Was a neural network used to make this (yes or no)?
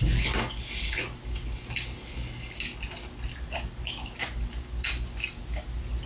no